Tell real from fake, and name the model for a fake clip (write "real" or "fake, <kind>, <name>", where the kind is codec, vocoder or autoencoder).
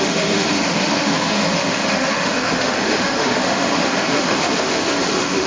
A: fake, autoencoder, DAC-VAE